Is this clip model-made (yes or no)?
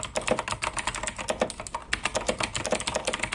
no